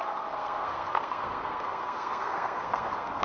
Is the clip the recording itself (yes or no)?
no